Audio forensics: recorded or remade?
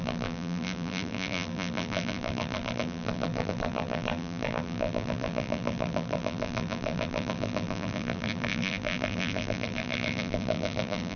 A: remade